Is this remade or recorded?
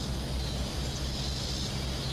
recorded